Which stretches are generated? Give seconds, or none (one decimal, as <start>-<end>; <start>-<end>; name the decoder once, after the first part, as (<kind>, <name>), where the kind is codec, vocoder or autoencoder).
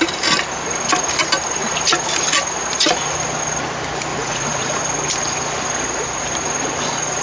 4.1-4.8 (vocoder, Vocos)